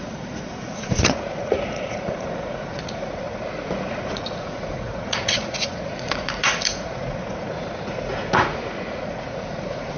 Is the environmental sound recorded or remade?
remade